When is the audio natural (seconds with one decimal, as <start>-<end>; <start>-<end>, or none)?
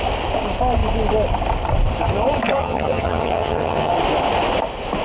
0.0-2.6; 3.9-5.0